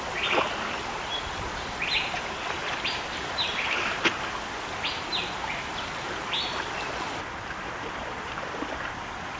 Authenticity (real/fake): real